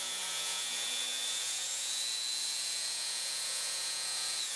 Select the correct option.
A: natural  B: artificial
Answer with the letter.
B